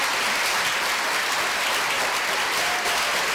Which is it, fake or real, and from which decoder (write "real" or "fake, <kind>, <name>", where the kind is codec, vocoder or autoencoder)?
real